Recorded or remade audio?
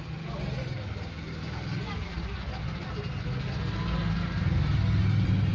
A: recorded